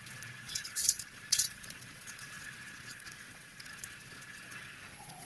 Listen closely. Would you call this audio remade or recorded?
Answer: remade